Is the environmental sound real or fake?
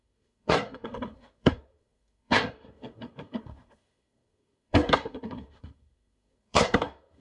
fake